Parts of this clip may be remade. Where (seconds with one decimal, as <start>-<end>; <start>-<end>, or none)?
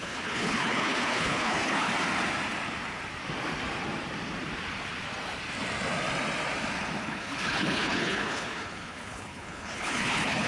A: 0.0-1.9; 7.0-10.5